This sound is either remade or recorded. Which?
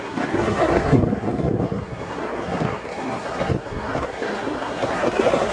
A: remade